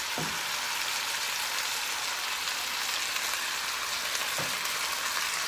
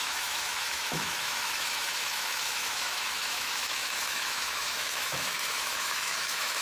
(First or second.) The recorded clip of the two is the first